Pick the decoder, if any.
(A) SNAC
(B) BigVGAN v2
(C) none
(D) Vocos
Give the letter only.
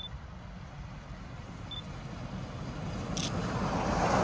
C